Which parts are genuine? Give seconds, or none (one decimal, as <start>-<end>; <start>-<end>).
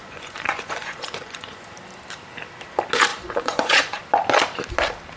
1.7-3.1; 4.0-5.2